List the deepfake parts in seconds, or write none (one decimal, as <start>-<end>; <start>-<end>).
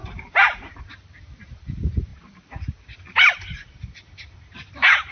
0.0-5.1